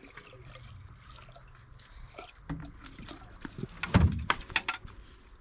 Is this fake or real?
real